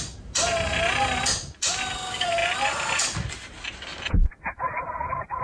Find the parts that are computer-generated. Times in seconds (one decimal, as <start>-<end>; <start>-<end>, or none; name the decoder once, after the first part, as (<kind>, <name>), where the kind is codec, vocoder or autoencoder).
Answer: none